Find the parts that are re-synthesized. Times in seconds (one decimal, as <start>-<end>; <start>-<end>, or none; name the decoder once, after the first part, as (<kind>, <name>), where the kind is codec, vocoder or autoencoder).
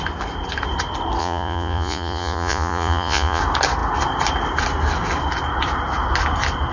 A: 1.2-3.4 (vocoder, Vocos)